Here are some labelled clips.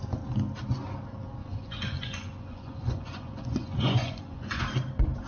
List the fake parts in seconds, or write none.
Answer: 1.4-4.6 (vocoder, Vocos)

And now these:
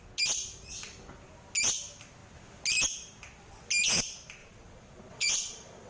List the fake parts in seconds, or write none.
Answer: 4.4-5.9 (vocoder, Vocos)

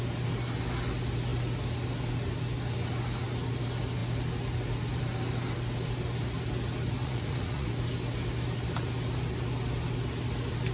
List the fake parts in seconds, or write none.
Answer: 7.0-7.7 (vocoder, Vocos)

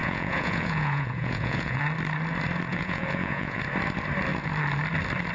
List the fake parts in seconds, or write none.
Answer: 0.0-1.8 (vocoder, Vocos); 2.7-3.6

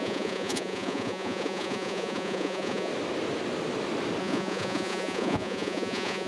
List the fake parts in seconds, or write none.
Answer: 0.0-2.9 (vocoder, Vocos); 4.2-6.3

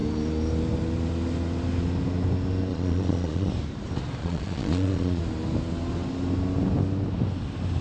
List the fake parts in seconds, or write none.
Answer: 2.7-3.5 (vocoder, Vocos); 4.2-5.2

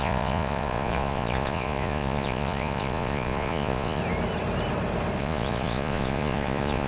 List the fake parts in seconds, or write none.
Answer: 0.0-4.0 (vocoder, Vocos); 5.2-6.9